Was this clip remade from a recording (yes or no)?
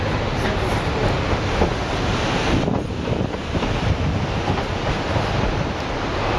no